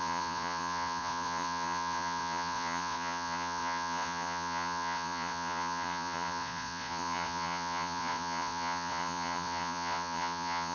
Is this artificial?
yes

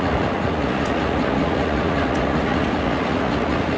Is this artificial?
yes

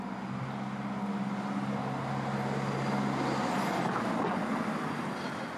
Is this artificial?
no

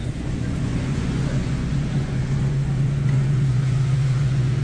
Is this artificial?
yes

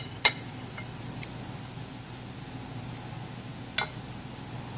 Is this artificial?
no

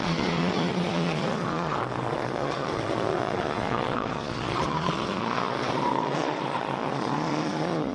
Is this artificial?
yes